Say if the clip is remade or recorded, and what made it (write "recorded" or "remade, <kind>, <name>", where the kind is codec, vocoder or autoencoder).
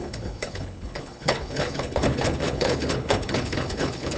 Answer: remade, codec, HILCodec